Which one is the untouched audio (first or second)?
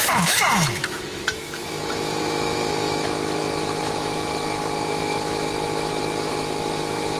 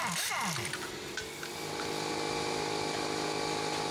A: second